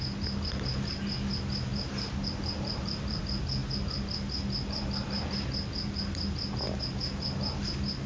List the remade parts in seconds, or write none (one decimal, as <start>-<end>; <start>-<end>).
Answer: 1.7-3.2